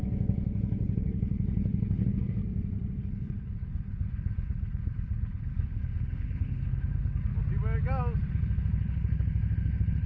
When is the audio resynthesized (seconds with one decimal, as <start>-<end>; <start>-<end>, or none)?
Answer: 0.0-2.4; 3.0-7.3; 8.3-10.1